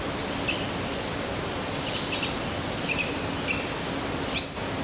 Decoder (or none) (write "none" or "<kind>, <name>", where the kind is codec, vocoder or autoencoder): none